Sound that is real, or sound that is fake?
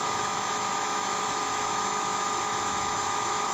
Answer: fake